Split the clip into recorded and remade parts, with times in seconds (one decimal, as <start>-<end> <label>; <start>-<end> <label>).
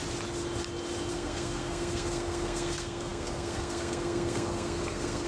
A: 0.0-1.1 recorded; 1.1-5.3 remade